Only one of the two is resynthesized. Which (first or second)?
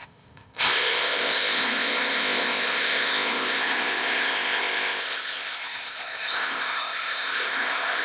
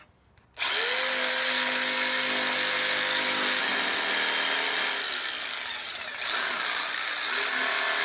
first